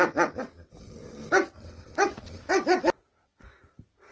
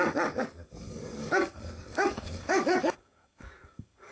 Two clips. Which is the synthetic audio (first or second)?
second